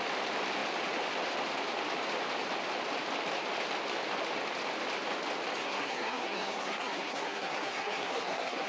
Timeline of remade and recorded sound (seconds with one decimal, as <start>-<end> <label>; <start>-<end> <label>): 0.0-5.6 recorded; 5.6-8.7 remade

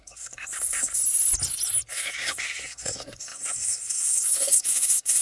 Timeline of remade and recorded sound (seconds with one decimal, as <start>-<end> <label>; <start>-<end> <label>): 0.0-1.0 remade; 1.0-1.9 recorded; 1.9-5.2 remade

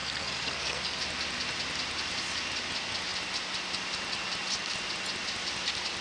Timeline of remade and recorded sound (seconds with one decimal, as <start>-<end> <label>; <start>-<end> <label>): 0.0-1.0 remade; 1.0-6.0 recorded